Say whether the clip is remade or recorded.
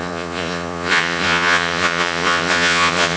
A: remade